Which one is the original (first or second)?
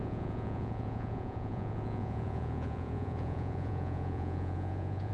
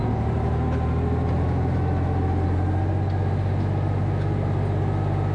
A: second